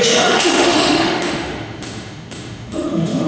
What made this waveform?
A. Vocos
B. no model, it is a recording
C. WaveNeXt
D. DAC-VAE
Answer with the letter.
D